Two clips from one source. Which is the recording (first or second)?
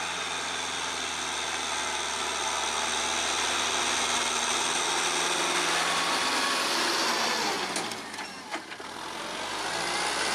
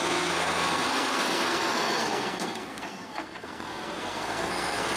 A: first